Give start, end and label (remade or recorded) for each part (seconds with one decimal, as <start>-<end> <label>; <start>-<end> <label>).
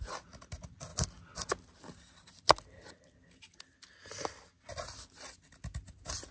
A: 0.0-6.3 recorded